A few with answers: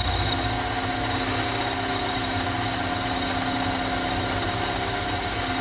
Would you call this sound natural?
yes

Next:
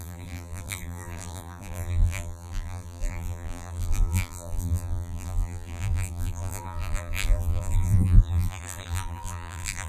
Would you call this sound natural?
no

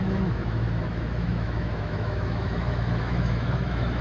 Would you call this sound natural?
no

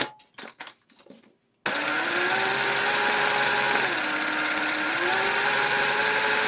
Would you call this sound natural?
yes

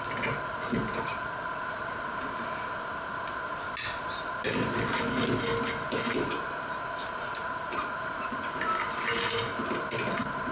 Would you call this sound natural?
yes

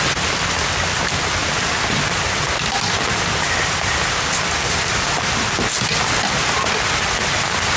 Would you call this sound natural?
yes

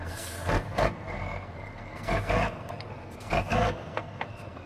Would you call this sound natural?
no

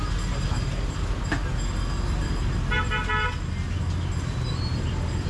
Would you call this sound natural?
yes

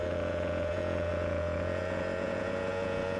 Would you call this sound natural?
no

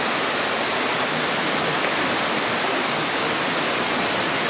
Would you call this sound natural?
yes